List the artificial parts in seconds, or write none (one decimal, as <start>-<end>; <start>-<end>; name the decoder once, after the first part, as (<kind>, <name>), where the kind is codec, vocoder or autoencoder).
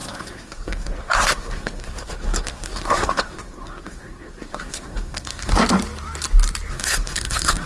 0.0-5.5 (codec, SNAC); 6.7-7.7